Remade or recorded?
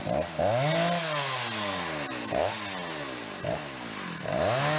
recorded